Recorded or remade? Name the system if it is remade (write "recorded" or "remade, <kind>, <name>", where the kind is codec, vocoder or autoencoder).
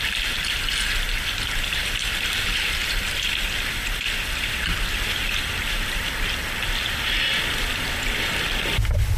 recorded